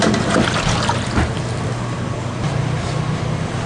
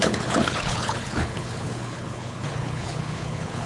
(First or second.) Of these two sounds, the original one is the first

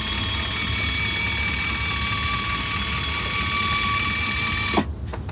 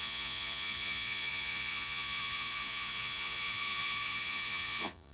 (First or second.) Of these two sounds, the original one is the first